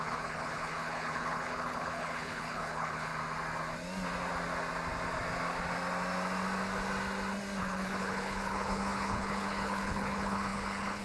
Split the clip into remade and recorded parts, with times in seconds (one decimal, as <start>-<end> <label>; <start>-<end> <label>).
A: 0.0-3.1 remade; 3.1-7.6 recorded; 7.6-11.0 remade